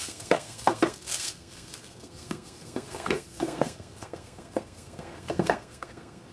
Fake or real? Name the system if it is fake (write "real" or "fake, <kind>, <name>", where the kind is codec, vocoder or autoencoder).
fake, codec, SNAC